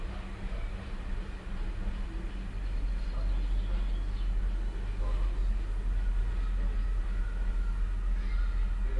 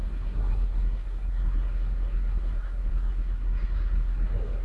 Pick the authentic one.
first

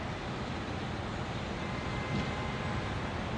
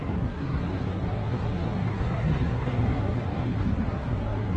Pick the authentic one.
first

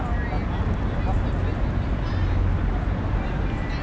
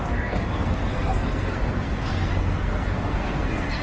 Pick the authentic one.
first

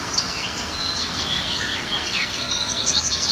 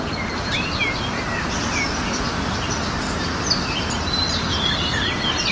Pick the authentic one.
second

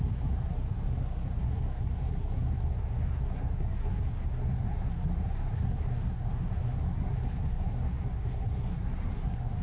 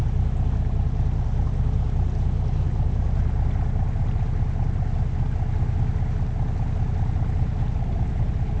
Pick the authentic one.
second